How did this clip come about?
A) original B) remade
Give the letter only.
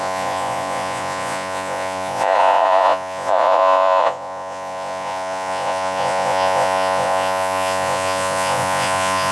B